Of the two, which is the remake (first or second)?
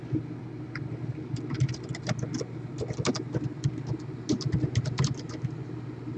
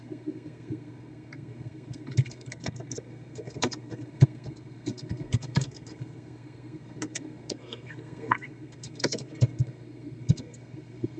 second